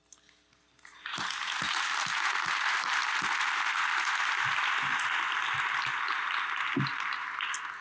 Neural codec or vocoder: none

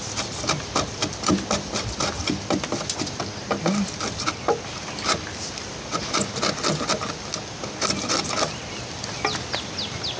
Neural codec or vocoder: none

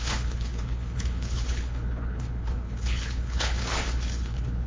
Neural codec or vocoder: codec, HILCodec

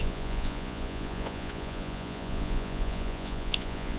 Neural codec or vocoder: vocoder, Vocos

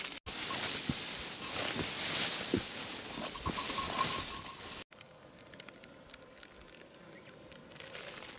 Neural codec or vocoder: none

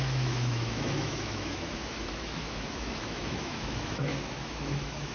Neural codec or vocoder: autoencoder, DAC-VAE